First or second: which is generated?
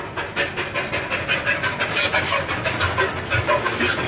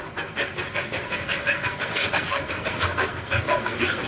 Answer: second